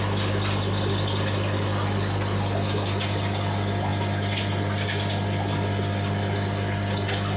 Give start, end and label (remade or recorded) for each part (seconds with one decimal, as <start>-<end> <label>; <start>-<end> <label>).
0.0-7.4 recorded